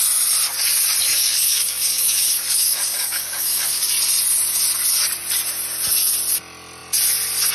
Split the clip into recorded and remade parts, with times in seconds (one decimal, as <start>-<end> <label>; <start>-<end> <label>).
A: 0.0-1.0 recorded; 1.0-3.9 remade; 3.9-7.5 recorded